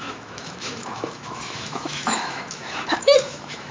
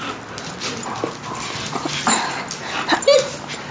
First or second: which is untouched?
second